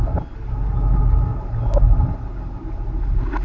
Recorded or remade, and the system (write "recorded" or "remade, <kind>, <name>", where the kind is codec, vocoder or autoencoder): recorded